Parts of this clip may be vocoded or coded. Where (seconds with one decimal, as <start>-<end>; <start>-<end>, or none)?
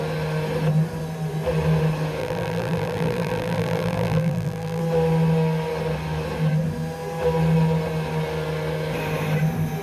2.2-4.8